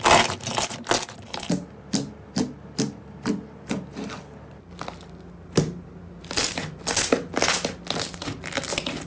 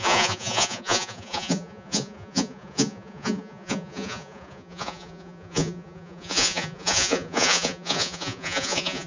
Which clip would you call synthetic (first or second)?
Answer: second